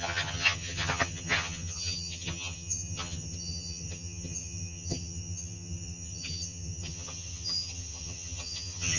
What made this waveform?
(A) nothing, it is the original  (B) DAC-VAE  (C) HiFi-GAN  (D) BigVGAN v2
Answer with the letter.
C